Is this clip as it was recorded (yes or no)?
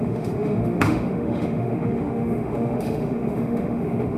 no